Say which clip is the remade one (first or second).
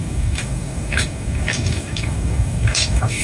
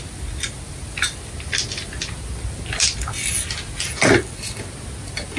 first